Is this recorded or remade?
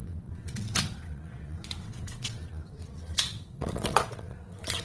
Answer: remade